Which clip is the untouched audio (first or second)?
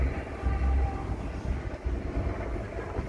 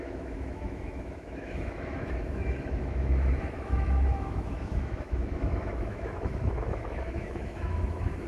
first